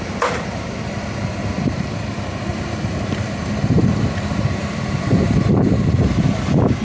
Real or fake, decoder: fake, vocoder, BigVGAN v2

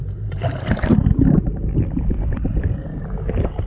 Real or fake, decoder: fake, vocoder, BigVGAN v2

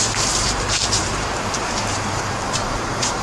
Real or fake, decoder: fake, vocoder, BigVGAN v2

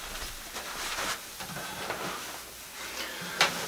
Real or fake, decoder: real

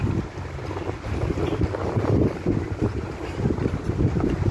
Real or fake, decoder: real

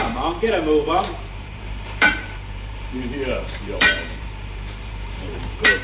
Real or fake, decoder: fake, vocoder, BigVGAN v2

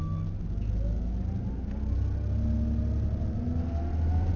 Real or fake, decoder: real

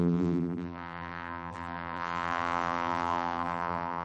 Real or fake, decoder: fake, vocoder, BigVGAN v2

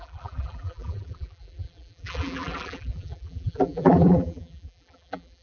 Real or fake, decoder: fake, vocoder, BigVGAN v2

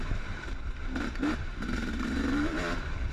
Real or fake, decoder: fake, vocoder, BigVGAN v2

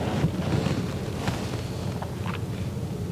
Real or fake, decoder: real